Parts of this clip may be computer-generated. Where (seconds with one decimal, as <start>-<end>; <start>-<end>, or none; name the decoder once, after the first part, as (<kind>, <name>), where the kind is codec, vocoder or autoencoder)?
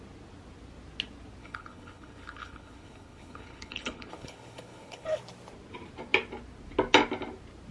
1.4-5.2 (codec, HILCodec)